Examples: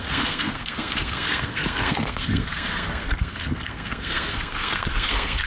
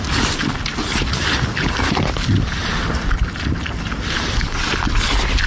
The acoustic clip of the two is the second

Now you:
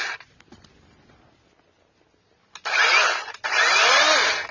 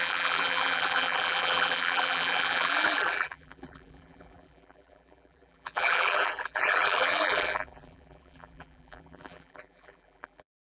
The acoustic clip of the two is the first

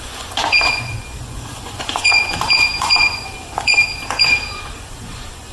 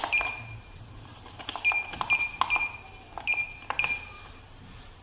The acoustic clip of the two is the second